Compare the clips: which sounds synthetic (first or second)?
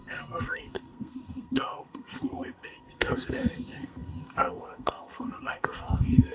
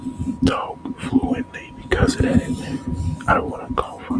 first